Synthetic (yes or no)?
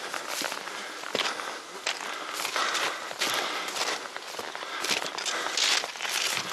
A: no